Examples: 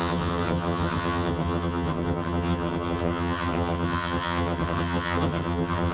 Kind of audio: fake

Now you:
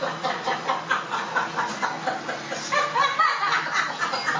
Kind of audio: real